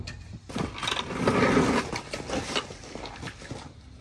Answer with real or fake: real